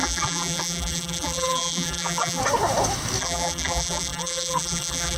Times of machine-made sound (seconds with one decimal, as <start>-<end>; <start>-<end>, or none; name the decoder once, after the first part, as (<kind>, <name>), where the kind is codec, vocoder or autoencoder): 0.0-2.4 (vocoder, BigVGAN v2); 3.2-5.2